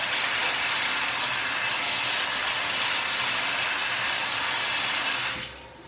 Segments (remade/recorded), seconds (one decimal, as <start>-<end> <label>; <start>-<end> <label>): 0.0-5.9 recorded